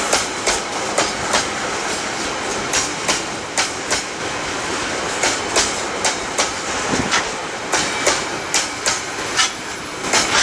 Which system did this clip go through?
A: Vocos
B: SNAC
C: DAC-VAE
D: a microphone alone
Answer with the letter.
D